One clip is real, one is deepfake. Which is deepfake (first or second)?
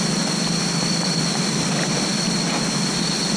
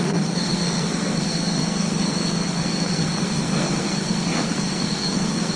second